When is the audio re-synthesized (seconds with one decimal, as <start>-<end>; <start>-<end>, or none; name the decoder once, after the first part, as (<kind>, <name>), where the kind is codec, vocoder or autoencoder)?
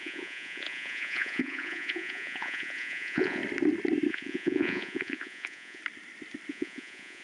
0.0-3.4 (vocoder, Vocos); 4.1-5.8; 6.5-7.2